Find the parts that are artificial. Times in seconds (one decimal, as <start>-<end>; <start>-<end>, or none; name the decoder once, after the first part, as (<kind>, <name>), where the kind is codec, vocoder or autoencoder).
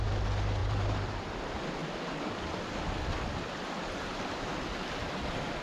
0.6-1.3 (vocoder, BigVGAN v2)